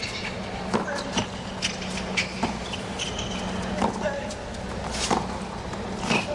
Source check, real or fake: real